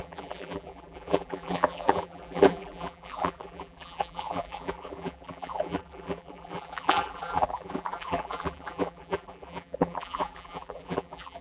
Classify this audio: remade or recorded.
remade